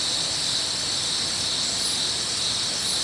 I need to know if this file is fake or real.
real